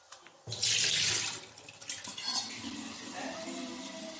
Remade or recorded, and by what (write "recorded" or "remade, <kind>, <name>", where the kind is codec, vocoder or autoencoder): recorded